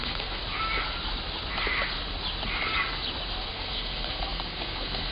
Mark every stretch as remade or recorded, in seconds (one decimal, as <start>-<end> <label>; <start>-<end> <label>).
0.0-0.4 remade; 0.4-3.5 recorded; 3.5-5.1 remade